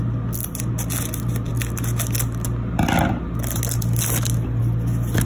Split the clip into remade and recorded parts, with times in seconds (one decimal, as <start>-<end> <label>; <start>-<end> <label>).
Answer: 0.0-5.2 recorded